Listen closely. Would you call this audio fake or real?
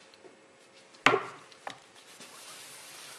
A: real